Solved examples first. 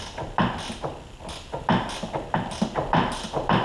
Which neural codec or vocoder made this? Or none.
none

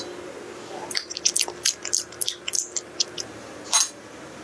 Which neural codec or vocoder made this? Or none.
none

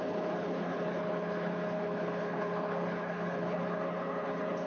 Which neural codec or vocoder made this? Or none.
codec, HILCodec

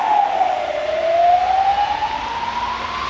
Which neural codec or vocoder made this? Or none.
none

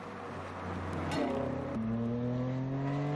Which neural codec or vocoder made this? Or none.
none